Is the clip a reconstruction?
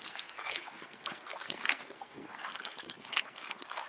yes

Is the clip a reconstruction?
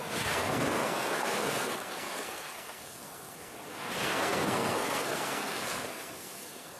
yes